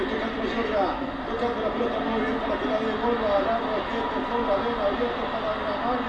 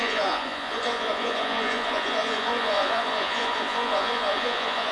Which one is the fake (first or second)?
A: second